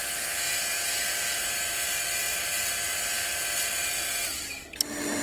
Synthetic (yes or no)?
yes